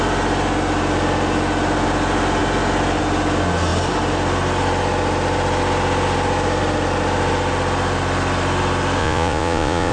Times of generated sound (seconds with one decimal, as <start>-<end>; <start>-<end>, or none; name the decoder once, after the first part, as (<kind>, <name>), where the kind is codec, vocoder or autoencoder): 9.0-9.9 (vocoder, Vocos)